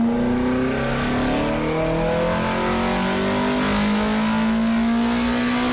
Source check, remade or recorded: recorded